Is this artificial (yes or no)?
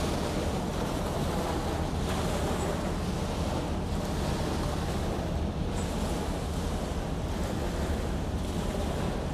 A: no